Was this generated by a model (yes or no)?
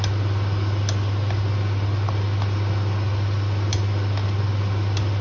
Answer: no